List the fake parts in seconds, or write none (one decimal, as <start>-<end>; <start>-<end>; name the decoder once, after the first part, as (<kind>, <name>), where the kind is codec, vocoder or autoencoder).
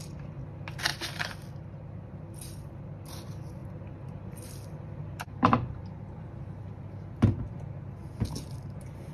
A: none